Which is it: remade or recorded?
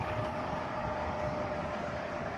remade